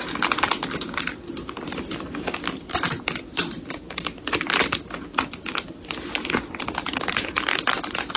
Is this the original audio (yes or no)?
yes